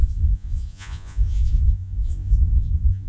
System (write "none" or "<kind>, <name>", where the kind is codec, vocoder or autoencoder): vocoder, Vocos